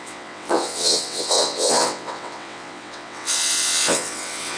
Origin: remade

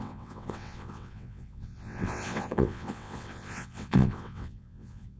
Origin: remade